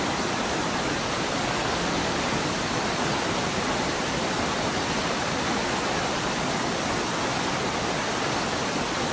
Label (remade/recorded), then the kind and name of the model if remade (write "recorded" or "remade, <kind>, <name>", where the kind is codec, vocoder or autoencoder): recorded